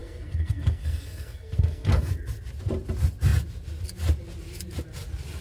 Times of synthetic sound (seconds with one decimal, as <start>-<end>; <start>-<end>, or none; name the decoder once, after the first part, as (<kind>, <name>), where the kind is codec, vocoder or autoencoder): 0.0-2.1 (codec, SNAC)